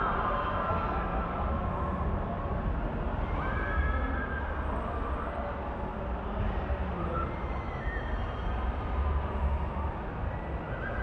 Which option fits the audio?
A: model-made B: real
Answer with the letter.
B